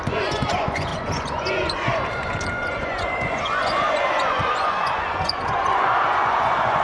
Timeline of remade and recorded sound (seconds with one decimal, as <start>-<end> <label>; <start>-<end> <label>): 0.0-6.8 remade